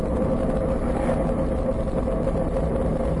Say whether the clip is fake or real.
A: real